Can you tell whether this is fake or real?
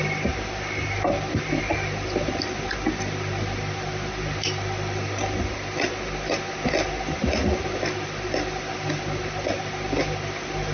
real